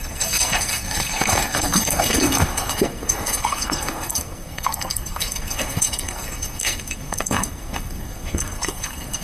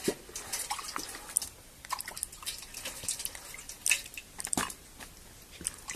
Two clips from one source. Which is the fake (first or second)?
first